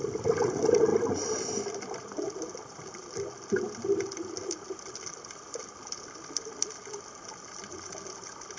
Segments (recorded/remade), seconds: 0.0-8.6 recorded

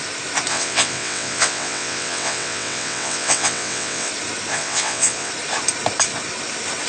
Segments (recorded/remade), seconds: 0.0-0.5 recorded; 0.5-4.1 remade; 4.1-4.5 recorded; 4.5-5.3 remade; 5.3-6.9 recorded

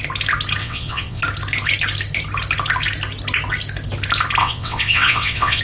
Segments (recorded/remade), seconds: 0.0-0.6 recorded; 0.6-1.2 remade; 1.2-4.4 recorded; 4.4-5.6 remade

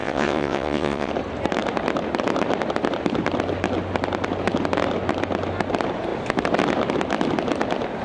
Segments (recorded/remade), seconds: 0.0-1.1 remade; 1.1-8.0 recorded

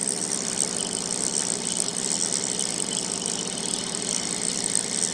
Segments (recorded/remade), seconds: 0.0-5.1 recorded

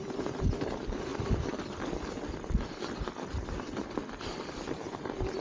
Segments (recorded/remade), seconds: 0.0-5.4 recorded